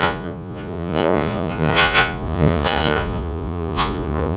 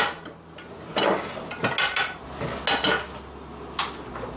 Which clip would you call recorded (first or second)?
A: second